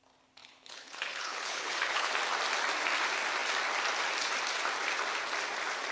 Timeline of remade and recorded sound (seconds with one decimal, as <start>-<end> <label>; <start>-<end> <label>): 0.0-0.4 recorded; 0.4-2.1 remade; 2.1-5.9 recorded